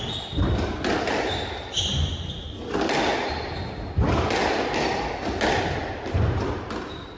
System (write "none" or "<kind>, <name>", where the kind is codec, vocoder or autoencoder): none